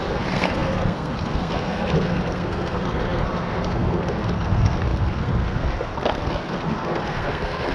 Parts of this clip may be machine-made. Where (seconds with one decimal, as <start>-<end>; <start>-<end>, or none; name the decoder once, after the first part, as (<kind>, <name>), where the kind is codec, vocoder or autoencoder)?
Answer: 0.0-7.7 (codec, SNAC)